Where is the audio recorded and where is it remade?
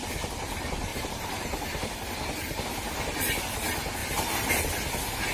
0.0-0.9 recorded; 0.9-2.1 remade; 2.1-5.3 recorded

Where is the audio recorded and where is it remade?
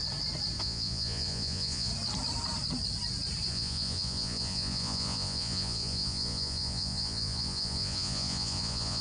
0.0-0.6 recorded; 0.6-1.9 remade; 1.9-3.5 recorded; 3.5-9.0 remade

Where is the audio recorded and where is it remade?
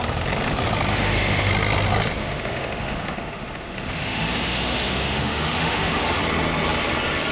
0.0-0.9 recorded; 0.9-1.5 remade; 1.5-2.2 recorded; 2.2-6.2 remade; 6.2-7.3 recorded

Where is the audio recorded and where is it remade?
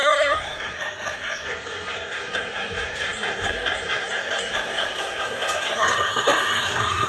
0.0-7.1 remade